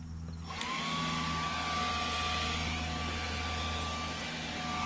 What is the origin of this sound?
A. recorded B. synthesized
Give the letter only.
A